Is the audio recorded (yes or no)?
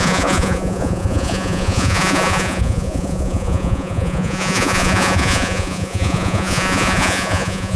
no